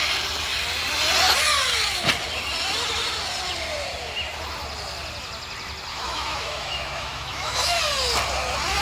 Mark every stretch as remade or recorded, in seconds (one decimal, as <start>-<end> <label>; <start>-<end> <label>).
0.0-5.9 recorded; 5.9-7.8 remade; 7.8-8.8 recorded